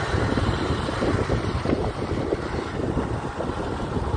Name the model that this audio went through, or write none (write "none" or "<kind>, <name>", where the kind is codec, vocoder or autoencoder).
vocoder, BigVGAN v2